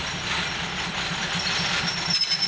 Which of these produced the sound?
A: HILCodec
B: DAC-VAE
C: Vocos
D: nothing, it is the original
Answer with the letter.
D